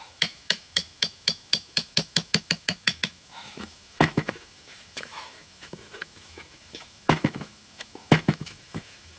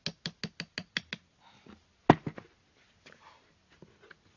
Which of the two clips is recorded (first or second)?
second